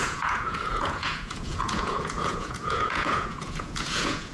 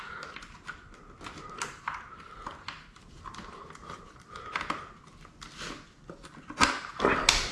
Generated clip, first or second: first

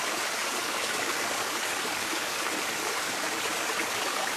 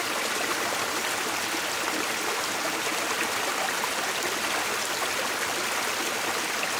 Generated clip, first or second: first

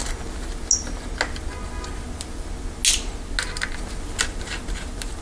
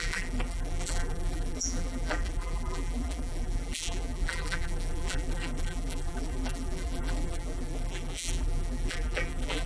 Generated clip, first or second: second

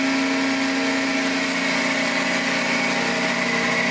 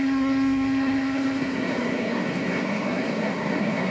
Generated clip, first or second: second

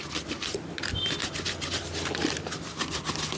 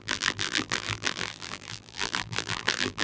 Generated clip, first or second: second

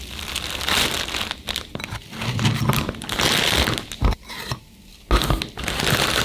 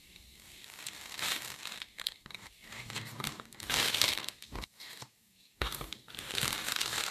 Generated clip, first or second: second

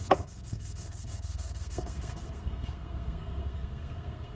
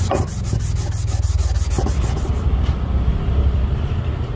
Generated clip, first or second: first